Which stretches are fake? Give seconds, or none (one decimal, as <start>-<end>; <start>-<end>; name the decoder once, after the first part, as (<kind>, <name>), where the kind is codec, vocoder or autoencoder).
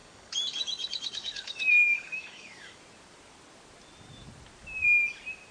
0.0-2.8 (codec, DAC)